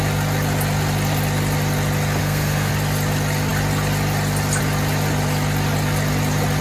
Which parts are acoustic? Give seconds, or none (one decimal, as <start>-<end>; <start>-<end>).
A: 0.0-2.2; 2.7-6.6